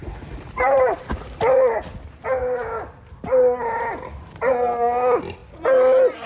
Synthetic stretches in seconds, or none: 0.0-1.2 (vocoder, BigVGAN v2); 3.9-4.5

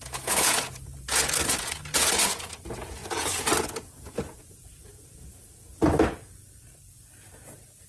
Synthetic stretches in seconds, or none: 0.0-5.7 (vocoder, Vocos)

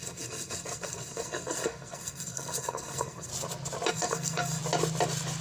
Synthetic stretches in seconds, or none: 0.0-3.3 (codec, SNAC); 3.9-4.6

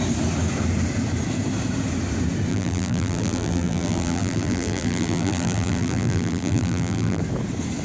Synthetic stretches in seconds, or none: 2.5-7.2 (vocoder, BigVGAN v2)